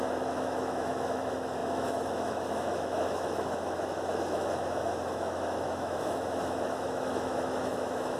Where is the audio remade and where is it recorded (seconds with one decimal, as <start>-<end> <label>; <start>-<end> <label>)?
0.0-8.2 remade